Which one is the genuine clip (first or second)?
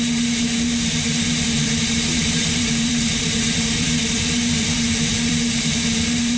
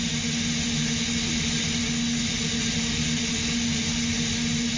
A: second